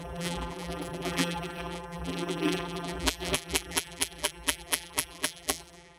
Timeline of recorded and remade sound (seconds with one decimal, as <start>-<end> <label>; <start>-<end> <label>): 0.0-6.0 remade